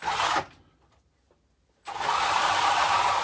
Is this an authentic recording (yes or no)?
yes